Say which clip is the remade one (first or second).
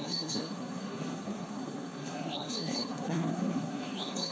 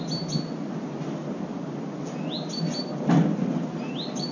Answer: first